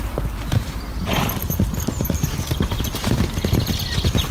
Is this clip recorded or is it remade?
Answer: remade